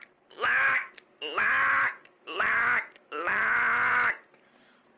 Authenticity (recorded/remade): recorded